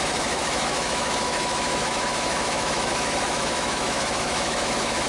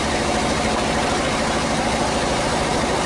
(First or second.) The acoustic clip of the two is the second